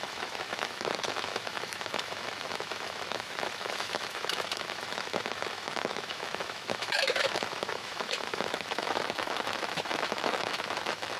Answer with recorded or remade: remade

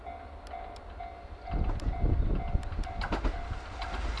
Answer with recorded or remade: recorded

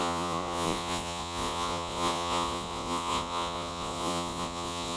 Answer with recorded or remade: remade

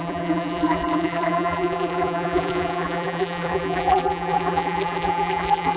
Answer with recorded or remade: remade